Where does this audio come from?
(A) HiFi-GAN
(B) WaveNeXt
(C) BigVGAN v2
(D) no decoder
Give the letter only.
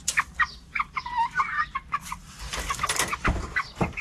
C